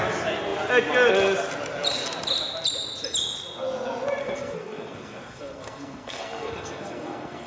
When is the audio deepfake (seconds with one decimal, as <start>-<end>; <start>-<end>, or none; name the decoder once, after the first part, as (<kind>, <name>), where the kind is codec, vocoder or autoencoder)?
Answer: 4.2-7.5 (codec, SNAC)